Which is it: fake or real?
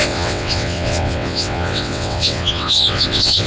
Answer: fake